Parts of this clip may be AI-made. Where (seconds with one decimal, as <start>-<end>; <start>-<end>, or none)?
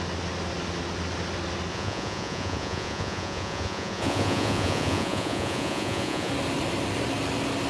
1.7-6.3